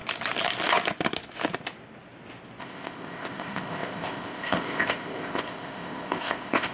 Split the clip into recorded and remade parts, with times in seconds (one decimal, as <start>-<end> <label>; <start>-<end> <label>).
0.0-2.6 recorded; 2.6-6.7 remade